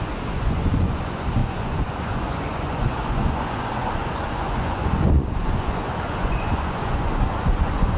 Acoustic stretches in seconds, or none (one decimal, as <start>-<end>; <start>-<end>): none